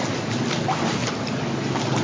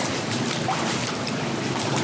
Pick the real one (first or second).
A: first